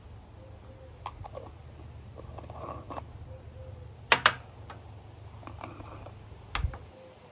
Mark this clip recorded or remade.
recorded